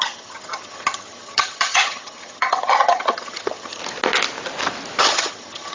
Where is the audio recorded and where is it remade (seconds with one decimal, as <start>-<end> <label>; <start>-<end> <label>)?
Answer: 0.0-3.8 remade; 3.8-5.0 recorded; 5.0-5.7 remade